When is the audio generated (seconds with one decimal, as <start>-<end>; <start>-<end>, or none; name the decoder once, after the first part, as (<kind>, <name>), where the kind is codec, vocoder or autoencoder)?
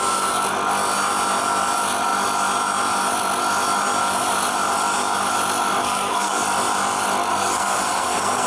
5.8-6.4 (codec, SNAC); 7.3-8.5